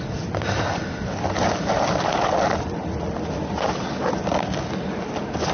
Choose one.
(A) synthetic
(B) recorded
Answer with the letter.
B